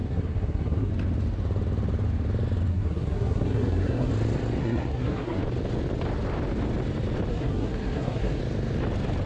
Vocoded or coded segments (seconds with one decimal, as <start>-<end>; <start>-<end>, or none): 0.0-0.9; 2.7-4.1; 4.6-5.4; 7.3-8.4